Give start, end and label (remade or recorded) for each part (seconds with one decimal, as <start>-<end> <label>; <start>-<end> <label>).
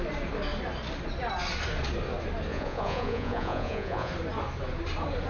0.0-2.5 recorded; 2.5-4.1 remade; 4.1-5.3 recorded